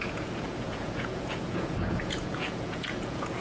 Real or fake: fake